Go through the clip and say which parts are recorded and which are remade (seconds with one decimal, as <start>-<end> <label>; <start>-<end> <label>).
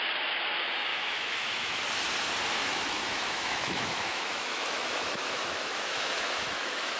0.0-0.9 recorded; 0.9-1.8 remade; 1.8-2.6 recorded; 2.6-7.0 remade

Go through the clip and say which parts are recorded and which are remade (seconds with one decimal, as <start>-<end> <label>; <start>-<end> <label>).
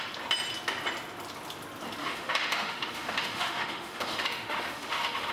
0.0-2.0 recorded; 2.0-5.3 remade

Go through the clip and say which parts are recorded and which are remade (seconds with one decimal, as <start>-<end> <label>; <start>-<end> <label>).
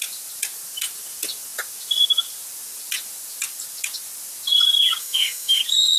0.0-5.0 recorded; 5.0-5.6 remade; 5.6-6.0 recorded